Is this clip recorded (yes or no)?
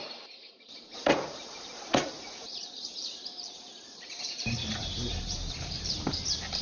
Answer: no